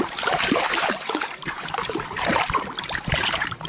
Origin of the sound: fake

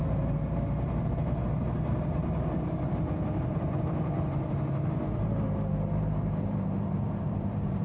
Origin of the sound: fake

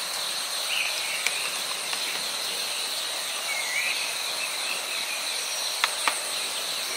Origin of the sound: real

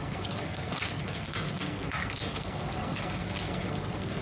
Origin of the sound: fake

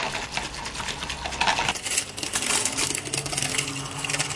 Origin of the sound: real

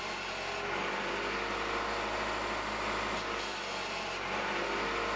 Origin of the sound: real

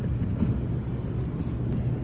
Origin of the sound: real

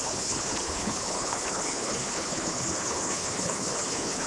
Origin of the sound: fake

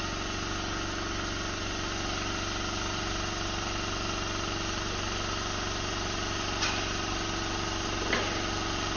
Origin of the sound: real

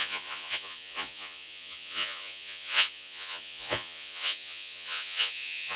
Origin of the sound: fake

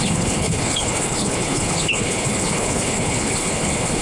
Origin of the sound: fake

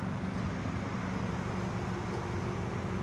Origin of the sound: real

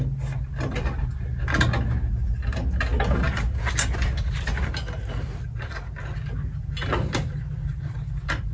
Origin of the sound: real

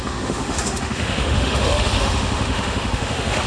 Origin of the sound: fake